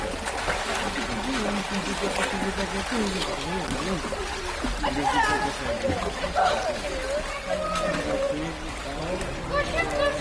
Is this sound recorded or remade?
recorded